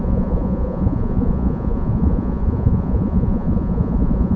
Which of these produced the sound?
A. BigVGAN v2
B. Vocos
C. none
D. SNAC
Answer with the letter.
B